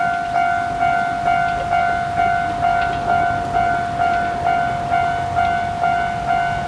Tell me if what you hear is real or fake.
real